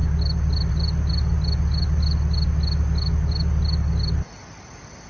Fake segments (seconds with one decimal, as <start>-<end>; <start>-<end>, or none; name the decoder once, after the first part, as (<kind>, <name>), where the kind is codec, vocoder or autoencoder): none